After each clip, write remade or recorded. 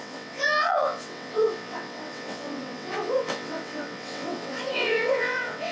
remade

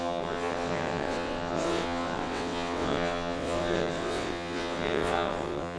remade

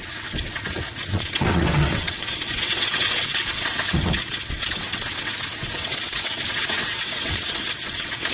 remade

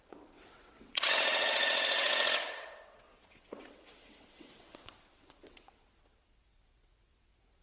remade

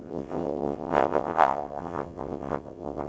remade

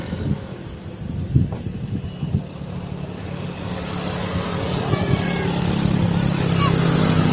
recorded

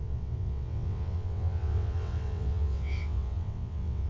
remade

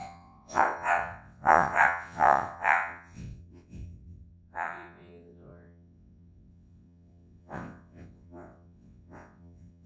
remade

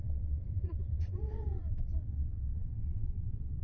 remade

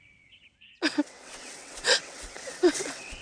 remade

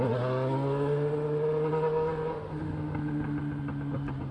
recorded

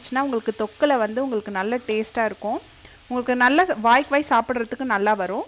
recorded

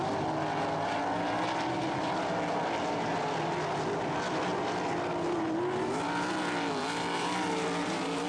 recorded